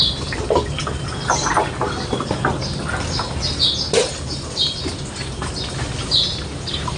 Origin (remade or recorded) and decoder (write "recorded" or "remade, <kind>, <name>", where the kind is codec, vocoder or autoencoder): recorded